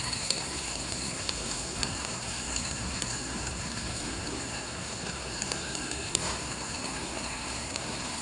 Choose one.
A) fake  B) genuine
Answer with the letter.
A